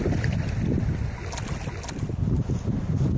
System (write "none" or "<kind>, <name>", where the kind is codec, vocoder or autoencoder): none